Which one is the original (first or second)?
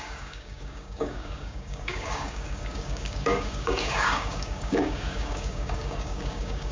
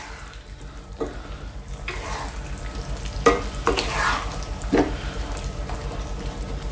second